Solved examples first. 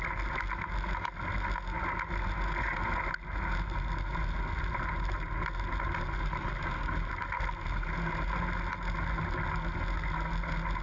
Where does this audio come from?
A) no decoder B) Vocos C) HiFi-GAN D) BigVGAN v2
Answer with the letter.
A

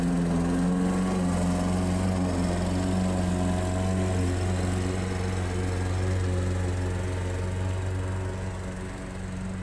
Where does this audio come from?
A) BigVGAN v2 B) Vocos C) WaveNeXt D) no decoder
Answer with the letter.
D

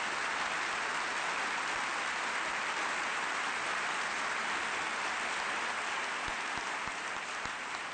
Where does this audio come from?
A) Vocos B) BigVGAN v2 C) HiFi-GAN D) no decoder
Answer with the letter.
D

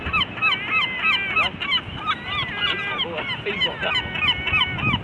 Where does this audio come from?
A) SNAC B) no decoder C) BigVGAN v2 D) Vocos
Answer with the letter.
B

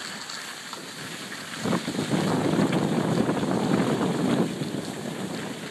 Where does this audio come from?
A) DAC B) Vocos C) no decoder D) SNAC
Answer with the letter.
C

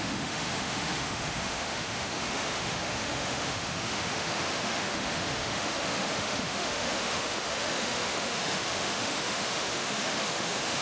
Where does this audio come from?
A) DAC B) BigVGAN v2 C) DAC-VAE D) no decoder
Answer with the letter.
C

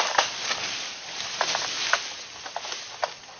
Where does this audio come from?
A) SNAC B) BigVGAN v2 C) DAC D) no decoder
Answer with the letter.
D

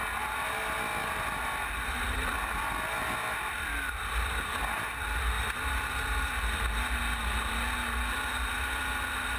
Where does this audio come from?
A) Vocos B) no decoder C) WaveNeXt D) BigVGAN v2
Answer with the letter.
B